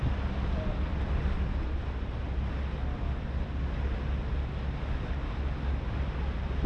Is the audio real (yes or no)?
yes